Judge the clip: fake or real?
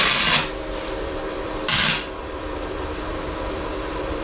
fake